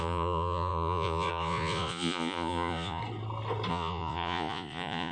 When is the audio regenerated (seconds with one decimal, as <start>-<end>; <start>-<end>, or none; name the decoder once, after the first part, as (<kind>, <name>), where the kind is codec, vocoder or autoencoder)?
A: 0.0-3.0 (vocoder, Vocos); 3.7-5.1